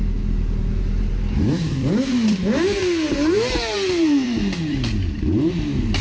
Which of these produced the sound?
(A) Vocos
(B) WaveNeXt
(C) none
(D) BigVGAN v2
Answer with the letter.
D